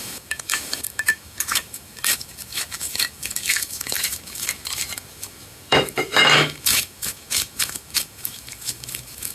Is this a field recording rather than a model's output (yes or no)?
no